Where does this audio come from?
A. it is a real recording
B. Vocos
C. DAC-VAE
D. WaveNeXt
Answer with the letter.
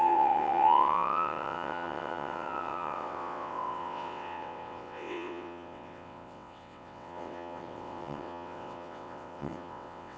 D